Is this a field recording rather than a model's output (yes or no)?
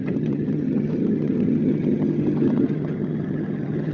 no